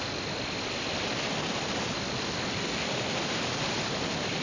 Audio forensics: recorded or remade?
recorded